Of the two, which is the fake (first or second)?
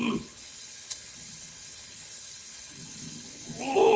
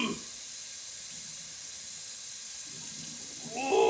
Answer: first